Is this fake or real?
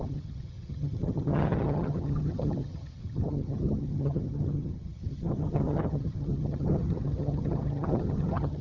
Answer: fake